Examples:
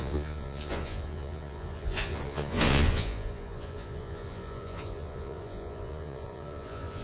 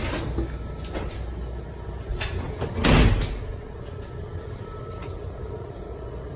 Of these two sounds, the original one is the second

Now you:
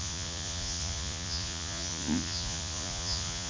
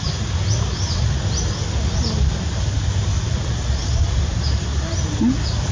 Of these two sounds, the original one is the second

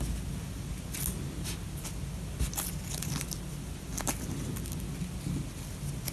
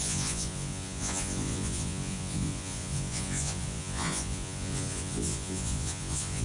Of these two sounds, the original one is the first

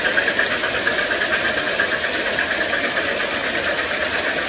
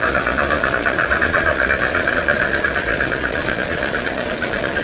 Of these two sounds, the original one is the first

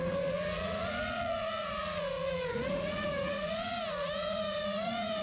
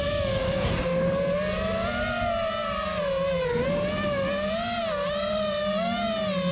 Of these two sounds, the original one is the second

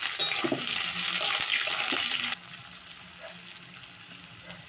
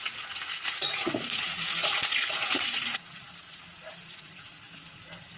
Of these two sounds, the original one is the first